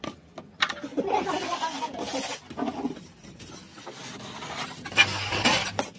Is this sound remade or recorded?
recorded